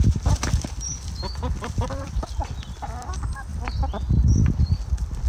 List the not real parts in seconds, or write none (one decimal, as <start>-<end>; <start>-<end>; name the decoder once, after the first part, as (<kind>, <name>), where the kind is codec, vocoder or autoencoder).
0.0-0.9 (vocoder, BigVGAN v2); 1.6-5.3

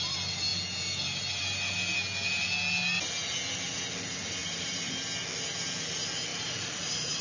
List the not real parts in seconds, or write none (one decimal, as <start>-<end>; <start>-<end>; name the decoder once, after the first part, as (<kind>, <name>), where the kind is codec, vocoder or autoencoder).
4.4-4.9 (vocoder, BigVGAN v2); 6.3-7.2

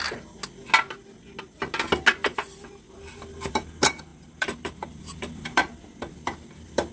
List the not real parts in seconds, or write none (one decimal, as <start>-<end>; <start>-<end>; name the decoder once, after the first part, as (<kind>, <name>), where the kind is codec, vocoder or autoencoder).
2.2-3.5 (vocoder, BigVGAN v2); 4.1-6.9

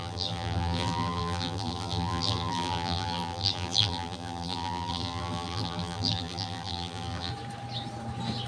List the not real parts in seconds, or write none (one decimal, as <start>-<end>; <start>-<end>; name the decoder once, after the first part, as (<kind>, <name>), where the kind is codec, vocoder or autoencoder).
0.0-7.3 (vocoder, BigVGAN v2)

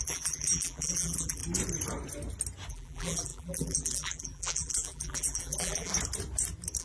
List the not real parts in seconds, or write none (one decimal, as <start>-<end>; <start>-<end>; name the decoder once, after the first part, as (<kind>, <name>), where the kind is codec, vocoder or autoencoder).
0.0-1.4 (vocoder, BigVGAN v2); 2.7-5.9